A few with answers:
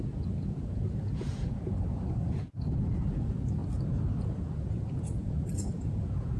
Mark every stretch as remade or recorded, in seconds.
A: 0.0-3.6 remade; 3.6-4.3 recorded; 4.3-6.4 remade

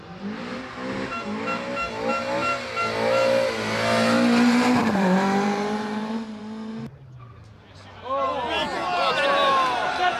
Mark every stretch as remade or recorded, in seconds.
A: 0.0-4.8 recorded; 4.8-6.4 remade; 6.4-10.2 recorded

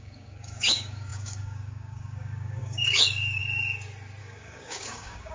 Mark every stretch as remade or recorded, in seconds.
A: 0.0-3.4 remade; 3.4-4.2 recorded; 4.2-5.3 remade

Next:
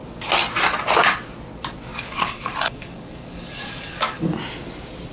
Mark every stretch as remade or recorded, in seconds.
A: 0.0-1.9 recorded; 1.9-4.2 remade; 4.2-5.1 recorded